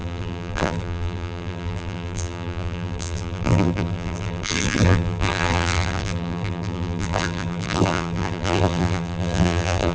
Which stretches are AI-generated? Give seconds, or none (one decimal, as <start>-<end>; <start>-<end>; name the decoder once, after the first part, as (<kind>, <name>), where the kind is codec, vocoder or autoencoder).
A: 0.0-9.9 (vocoder, BigVGAN v2)